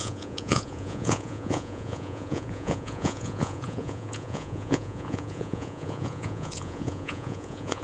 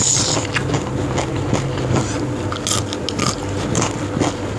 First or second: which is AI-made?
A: first